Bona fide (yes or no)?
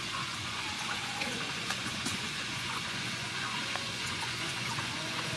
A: no